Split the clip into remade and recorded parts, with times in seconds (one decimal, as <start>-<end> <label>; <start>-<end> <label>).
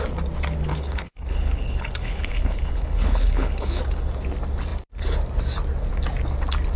0.0-0.7 recorded; 0.7-3.8 remade; 3.8-6.8 recorded